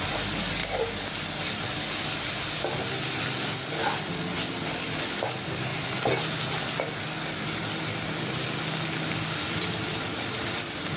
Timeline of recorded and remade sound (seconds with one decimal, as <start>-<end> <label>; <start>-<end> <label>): 0.0-9.9 recorded; 9.9-11.0 remade